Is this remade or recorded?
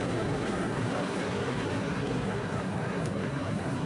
remade